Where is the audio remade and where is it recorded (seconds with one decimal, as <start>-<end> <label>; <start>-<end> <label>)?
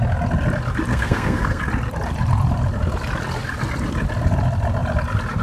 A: 0.0-0.9 recorded; 0.9-1.6 remade; 1.6-5.4 recorded